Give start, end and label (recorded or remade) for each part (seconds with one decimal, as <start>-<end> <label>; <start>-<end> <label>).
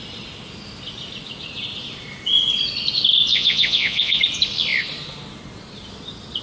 0.0-3.3 recorded; 3.3-4.2 remade; 4.2-6.4 recorded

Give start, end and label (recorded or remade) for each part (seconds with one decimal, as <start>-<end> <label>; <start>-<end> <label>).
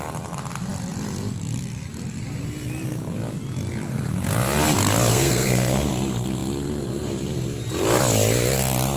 0.0-5.1 recorded; 5.1-5.9 remade; 5.9-9.0 recorded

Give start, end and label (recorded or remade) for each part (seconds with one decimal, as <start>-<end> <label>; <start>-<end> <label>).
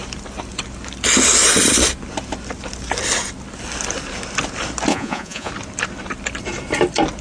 0.0-4.9 recorded; 4.9-5.5 remade; 5.5-7.2 recorded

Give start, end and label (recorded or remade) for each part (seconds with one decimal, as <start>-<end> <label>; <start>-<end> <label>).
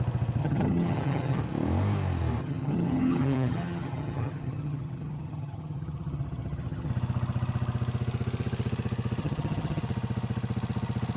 0.0-0.4 recorded; 0.4-1.4 remade; 1.4-2.4 recorded; 2.4-6.9 remade; 6.9-9.2 recorded; 9.2-9.8 remade; 9.8-11.2 recorded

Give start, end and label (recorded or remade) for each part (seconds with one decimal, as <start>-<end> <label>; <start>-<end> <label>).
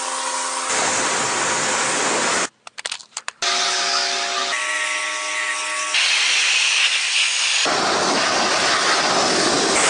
0.0-3.0 recorded; 3.0-3.9 remade; 3.9-9.9 recorded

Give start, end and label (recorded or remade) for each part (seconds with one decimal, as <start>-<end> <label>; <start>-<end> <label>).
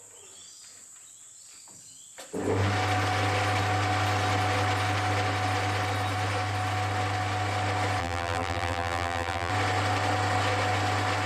0.0-8.0 recorded; 8.0-9.5 remade; 9.5-11.3 recorded